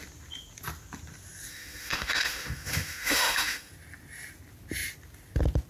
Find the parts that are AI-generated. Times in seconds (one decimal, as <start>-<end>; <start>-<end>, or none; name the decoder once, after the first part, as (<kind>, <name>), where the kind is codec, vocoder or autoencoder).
1.5-3.7 (autoencoder, DAC-VAE)